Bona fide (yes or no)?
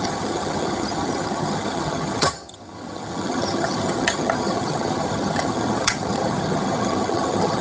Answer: no